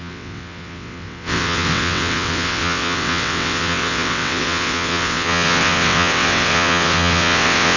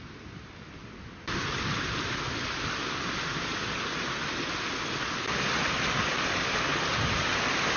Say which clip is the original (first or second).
second